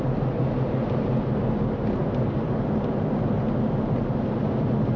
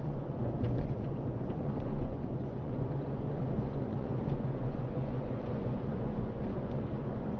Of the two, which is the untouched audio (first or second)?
first